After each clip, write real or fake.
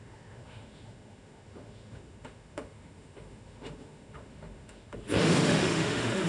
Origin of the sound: fake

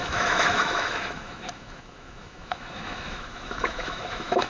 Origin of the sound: fake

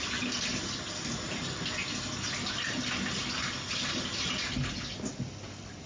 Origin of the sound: real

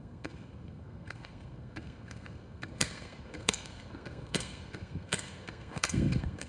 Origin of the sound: fake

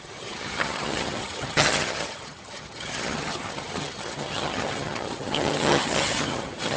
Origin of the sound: fake